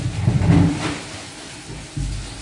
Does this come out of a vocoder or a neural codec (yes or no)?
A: no